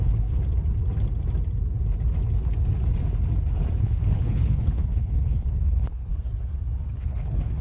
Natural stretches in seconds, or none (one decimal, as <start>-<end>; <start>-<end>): 0.4-3.8; 6.1-7.0